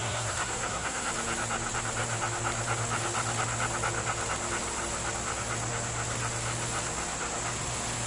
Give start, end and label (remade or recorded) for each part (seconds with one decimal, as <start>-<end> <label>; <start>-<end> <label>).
0.0-1.1 remade; 1.1-8.1 recorded